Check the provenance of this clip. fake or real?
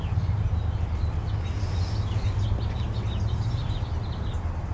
real